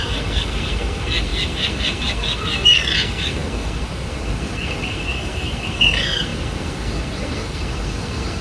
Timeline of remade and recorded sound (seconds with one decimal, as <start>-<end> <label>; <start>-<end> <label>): 0.0-8.4 remade